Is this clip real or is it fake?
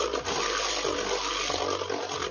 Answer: real